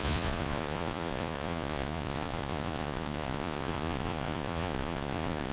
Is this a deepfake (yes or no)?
yes